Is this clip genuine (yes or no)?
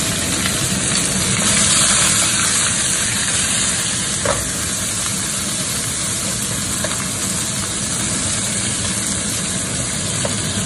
yes